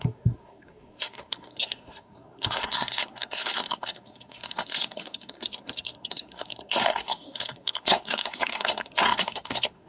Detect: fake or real fake